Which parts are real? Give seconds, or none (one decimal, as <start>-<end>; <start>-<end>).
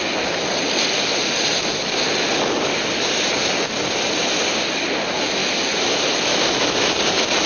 0.0-5.4; 7.1-7.5